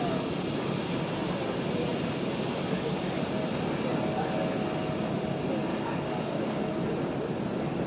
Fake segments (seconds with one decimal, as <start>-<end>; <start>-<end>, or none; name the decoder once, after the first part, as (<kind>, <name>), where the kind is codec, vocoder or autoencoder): 5.7-6.7 (codec, DAC)